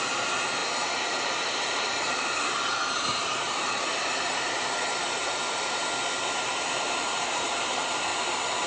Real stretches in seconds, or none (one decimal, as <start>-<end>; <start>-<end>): 5.8-6.4; 8.1-8.7